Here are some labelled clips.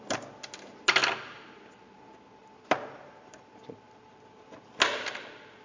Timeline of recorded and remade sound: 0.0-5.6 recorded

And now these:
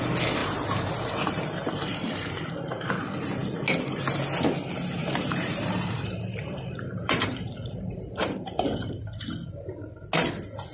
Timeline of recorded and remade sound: 0.0-0.4 recorded; 0.4-2.9 remade; 2.9-5.0 recorded; 5.0-9.0 remade; 9.0-10.7 recorded

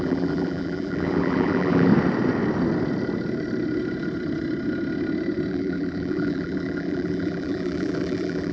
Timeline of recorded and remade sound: 0.0-1.9 remade; 1.9-5.5 recorded; 5.5-8.5 remade

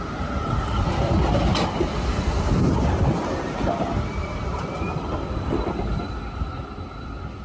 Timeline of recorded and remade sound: 0.0-4.2 recorded; 4.2-6.1 remade; 6.1-7.4 recorded

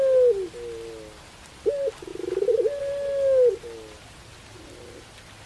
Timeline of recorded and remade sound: 0.0-2.1 recorded; 2.1-2.8 remade; 2.8-5.5 recorded

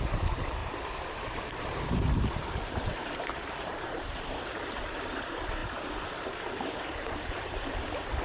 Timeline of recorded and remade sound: 0.0-8.2 remade

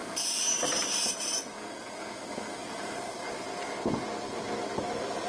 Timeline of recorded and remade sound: 0.0-1.2 remade; 1.2-2.6 recorded; 2.6-3.6 remade; 3.6-5.3 recorded